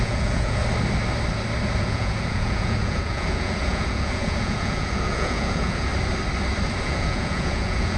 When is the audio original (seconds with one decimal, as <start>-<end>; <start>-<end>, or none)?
0.6-1.8; 5.9-6.8

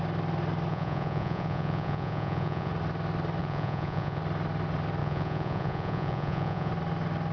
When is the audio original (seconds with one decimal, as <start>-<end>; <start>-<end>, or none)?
0.0-0.7; 2.7-3.4; 4.2-5.0; 6.7-7.3